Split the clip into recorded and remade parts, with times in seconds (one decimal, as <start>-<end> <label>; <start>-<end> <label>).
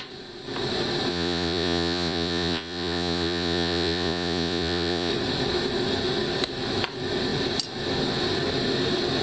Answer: 0.0-1.1 recorded; 1.1-5.1 remade; 5.1-9.2 recorded